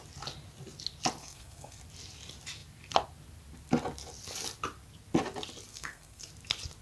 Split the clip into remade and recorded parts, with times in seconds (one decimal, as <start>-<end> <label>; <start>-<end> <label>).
0.0-1.2 recorded; 1.2-1.8 remade; 1.8-5.7 recorded; 5.7-6.3 remade; 6.3-6.8 recorded